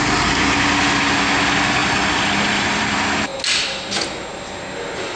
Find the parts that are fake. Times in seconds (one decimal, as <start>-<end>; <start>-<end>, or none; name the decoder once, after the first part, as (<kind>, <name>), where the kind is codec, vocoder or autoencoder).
1.8-2.8 (vocoder, BigVGAN v2)